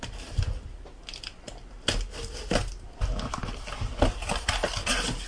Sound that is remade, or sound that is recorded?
recorded